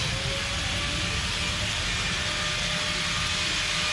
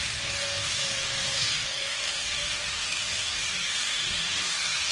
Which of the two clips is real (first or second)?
first